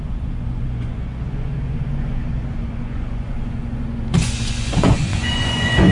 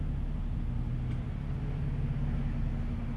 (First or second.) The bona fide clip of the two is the second